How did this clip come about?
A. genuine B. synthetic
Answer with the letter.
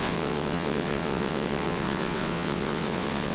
B